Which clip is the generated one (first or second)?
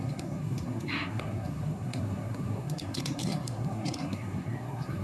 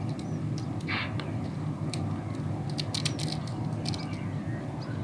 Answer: first